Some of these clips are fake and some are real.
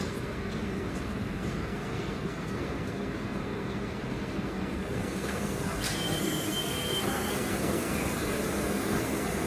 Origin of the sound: fake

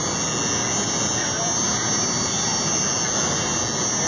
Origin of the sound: real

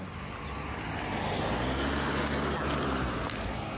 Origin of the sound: real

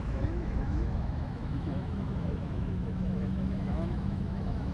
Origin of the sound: fake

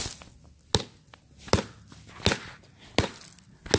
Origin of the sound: real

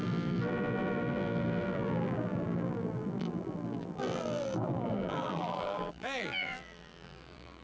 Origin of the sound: fake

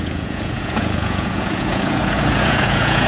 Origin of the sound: fake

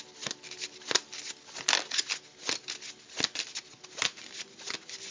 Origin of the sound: real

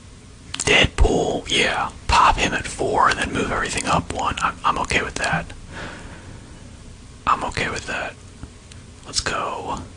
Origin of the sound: real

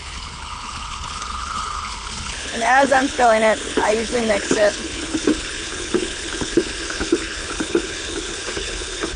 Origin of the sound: fake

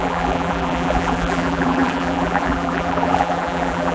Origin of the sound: fake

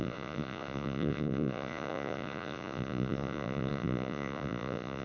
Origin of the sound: fake